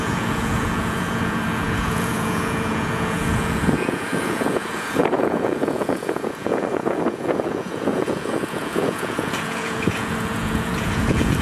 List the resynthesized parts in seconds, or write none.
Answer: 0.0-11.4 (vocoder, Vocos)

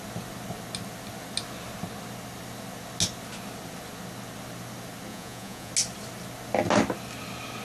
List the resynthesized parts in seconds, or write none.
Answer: 5.1-5.7 (vocoder, Vocos)

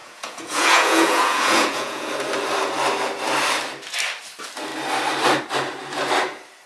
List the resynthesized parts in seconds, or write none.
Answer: 0.0-2.1 (vocoder, Vocos)

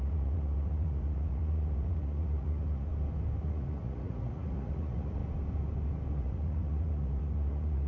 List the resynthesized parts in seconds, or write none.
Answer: 0.0-2.9 (vocoder, Vocos); 3.4-5.2; 6.1-7.9

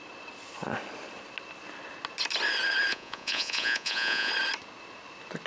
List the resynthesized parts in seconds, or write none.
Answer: 2.9-4.3 (vocoder, Vocos)

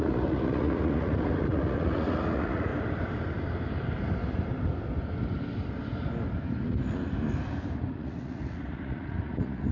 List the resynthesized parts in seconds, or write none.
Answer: 0.0-2.7 (vocoder, Vocos); 7.9-9.7

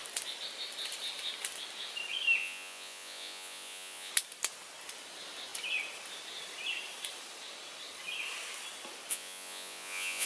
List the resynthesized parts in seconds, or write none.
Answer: 2.4-4.1 (vocoder, Vocos); 9.1-10.3